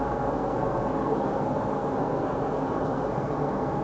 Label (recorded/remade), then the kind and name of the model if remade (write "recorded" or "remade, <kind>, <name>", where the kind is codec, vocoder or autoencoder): remade, codec, SNAC